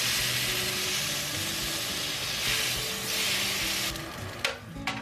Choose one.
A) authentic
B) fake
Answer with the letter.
A